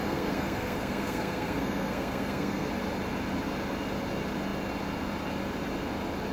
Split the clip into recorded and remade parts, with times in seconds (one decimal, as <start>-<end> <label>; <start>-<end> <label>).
0.0-2.7 remade; 2.7-6.3 recorded